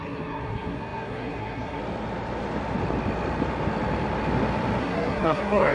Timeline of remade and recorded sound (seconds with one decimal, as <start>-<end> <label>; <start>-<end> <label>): 0.0-1.8 remade; 1.8-4.8 recorded; 4.8-5.7 remade